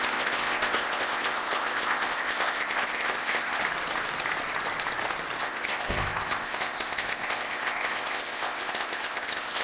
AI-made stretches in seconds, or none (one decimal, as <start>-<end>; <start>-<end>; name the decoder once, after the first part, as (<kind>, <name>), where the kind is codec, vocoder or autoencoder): 0.0-3.6 (codec, ZipCodec); 5.4-9.6